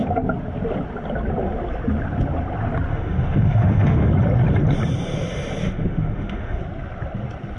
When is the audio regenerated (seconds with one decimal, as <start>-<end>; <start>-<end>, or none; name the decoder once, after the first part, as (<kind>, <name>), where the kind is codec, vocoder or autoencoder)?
2.9-4.1 (autoencoder, DAC-VAE); 5.6-6.6